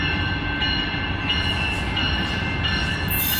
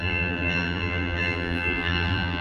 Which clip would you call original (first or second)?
first